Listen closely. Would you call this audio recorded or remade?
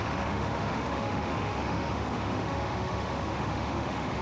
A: remade